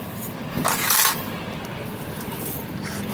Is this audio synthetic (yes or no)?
no